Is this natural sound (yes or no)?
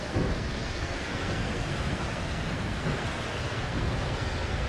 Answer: no